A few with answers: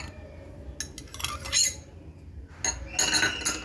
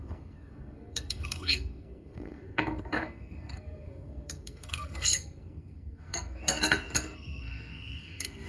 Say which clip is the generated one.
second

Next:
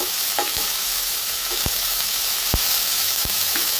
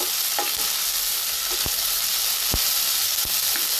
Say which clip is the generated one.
first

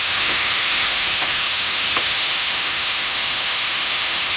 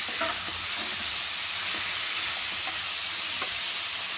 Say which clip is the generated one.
first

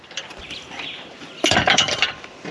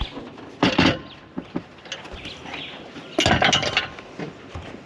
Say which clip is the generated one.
first